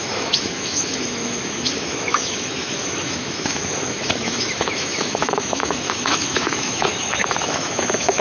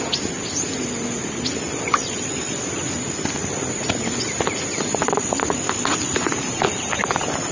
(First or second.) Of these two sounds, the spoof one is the first